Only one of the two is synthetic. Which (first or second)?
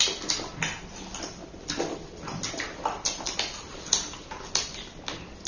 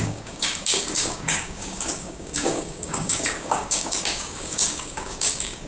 second